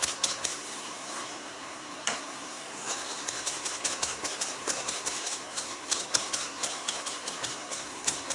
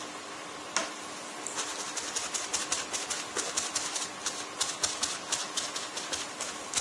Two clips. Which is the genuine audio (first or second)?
second